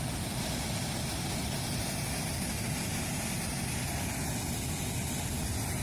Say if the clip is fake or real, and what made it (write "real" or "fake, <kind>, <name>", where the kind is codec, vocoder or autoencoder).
real